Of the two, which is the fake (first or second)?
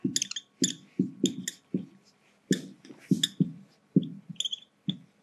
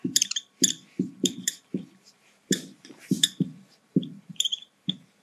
second